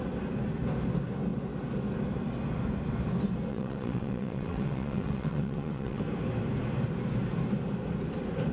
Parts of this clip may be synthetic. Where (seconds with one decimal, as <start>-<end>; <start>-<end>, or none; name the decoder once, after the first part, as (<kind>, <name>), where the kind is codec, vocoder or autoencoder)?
3.5-6.0 (vocoder, WaveNeXt)